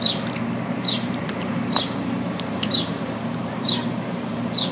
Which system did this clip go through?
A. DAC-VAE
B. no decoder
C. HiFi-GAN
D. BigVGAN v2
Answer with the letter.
D